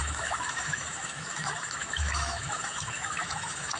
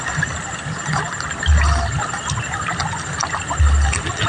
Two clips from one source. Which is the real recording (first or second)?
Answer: second